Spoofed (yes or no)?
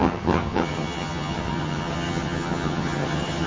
yes